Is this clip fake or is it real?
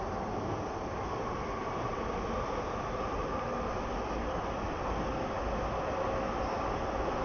real